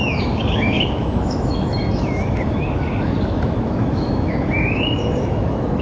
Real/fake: fake